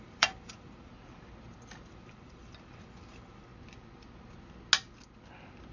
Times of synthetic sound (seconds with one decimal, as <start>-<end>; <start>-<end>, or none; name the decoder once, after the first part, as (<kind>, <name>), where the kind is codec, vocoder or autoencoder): 0.0-0.9 (vocoder, BigVGAN v2); 1.9-3.5